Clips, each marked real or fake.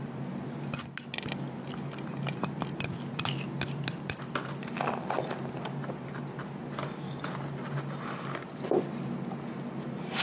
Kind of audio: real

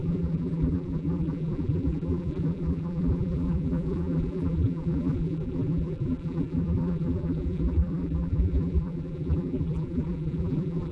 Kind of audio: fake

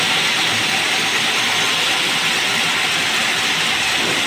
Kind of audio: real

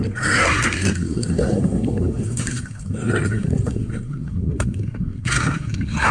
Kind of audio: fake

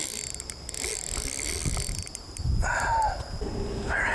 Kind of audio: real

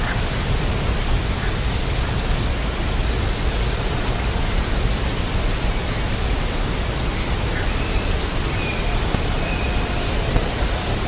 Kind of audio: real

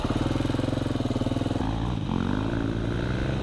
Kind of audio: real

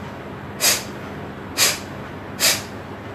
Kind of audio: real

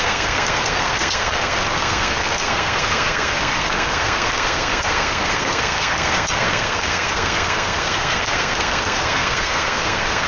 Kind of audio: fake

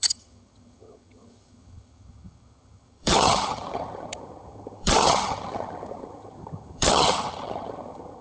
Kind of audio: fake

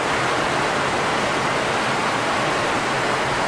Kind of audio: real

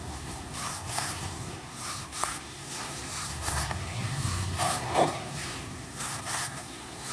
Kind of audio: fake